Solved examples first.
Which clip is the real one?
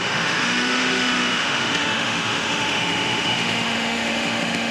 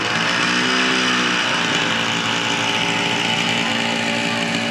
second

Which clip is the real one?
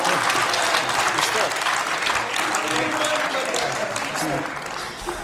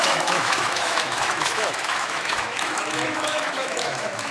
first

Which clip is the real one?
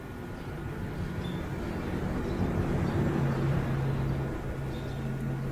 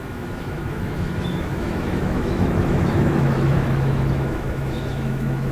first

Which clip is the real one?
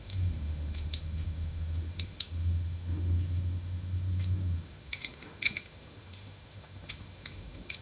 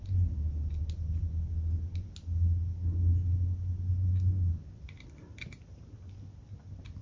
second